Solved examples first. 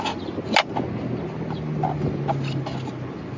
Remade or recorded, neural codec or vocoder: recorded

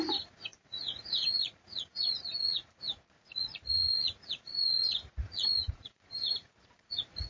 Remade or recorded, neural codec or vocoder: remade, vocoder, Vocos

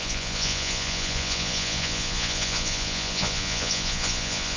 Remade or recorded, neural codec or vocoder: remade, vocoder, Vocos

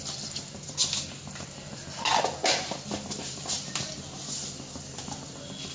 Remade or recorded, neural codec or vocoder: recorded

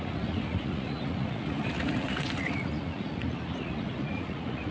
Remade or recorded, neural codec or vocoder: remade, vocoder, Vocos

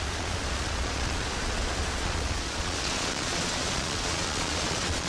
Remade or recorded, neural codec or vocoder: remade, vocoder, Vocos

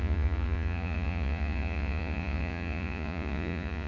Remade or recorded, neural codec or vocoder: remade, vocoder, Vocos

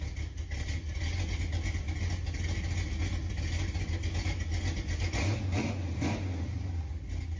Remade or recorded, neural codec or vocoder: recorded